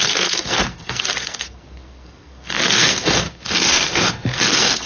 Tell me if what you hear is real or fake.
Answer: fake